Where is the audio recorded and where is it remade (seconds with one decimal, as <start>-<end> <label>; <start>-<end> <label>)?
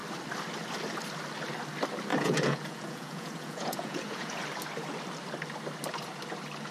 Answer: 0.0-2.1 recorded; 2.1-4.4 remade; 4.4-6.7 recorded